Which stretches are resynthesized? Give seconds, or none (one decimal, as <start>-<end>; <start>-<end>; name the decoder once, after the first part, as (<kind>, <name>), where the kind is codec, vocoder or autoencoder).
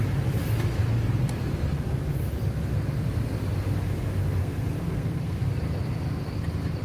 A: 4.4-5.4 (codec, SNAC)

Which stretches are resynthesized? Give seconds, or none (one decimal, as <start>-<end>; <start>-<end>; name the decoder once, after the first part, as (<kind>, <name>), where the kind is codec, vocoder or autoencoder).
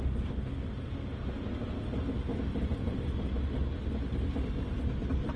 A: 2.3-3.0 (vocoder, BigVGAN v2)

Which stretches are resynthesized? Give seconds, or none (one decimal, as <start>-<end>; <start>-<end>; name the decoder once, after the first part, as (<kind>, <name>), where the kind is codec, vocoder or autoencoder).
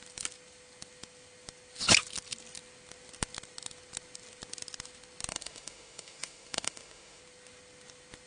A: 5.3-7.2 (autoencoder, DAC-VAE)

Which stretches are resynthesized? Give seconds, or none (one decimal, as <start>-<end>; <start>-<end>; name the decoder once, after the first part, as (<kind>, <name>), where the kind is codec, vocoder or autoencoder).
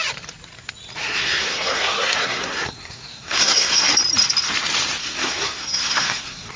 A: 1.0-3.9 (codec, SNAC); 5.0-6.6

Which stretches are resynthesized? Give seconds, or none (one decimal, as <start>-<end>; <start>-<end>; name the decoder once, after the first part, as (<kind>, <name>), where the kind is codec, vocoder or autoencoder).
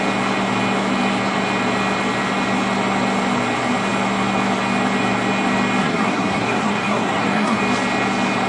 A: 5.8-7.6 (codec, SNAC)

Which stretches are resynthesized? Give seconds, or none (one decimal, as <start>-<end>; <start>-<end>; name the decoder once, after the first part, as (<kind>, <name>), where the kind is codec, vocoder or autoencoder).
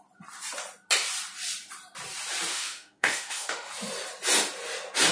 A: 2.5-3.7 (autoencoder, DAC-VAE)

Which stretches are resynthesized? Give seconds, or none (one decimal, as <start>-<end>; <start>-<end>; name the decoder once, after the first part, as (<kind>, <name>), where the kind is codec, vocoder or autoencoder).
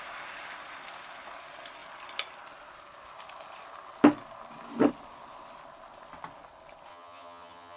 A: 6.9-7.8 (vocoder, HiFi-GAN)